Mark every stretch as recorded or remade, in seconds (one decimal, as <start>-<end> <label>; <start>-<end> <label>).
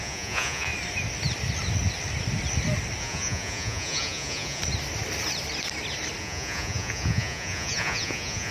0.0-0.7 remade; 0.7-3.0 recorded; 3.0-4.6 remade; 4.6-6.2 recorded; 6.2-8.5 remade